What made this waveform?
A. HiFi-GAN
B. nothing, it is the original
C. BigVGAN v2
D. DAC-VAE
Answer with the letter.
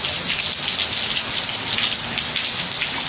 B